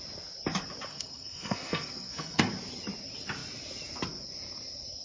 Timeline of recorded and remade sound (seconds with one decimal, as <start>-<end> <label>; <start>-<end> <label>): 0.0-0.9 recorded; 0.9-2.4 remade; 2.4-5.0 recorded